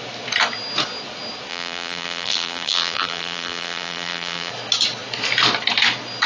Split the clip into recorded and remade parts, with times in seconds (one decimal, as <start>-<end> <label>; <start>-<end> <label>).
0.0-1.5 recorded; 1.5-4.5 remade; 4.5-6.3 recorded